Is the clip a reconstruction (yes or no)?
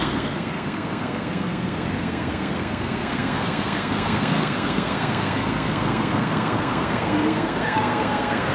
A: yes